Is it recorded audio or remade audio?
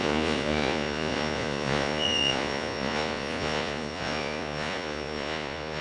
remade